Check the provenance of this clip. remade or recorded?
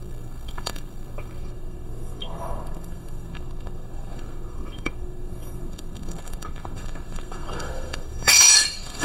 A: remade